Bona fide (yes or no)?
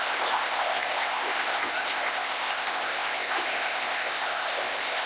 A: no